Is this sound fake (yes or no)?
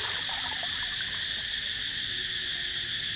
no